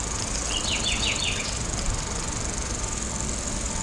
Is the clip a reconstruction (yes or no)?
no